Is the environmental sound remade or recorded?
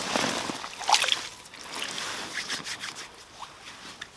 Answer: recorded